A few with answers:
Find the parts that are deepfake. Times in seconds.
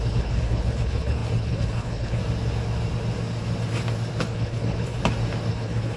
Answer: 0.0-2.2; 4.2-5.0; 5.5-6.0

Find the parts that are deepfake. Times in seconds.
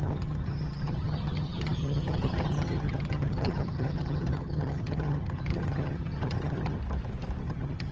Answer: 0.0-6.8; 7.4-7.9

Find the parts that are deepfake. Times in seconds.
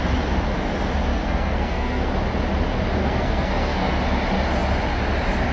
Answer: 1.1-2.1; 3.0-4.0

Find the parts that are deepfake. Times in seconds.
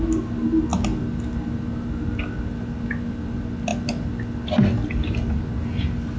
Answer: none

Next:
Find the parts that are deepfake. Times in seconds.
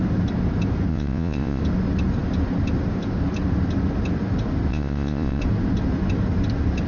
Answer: 0.9-1.6; 4.7-5.4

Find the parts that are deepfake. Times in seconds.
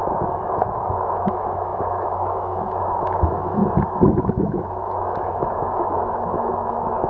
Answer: 0.0-3.6; 4.3-7.1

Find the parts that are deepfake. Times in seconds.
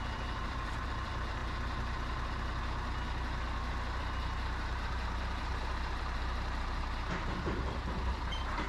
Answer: 0.0-1.4; 4.0-5.5; 6.0-8.7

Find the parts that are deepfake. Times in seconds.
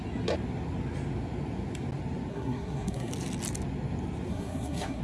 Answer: 2.3-3.1; 4.3-5.0